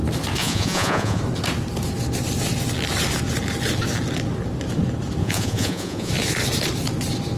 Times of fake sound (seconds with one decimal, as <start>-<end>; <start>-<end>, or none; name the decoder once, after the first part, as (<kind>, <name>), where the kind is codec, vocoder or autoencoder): 0.4-1.2 (vocoder, Vocos); 5.2-6.1